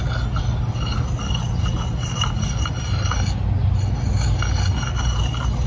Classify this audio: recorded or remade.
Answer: recorded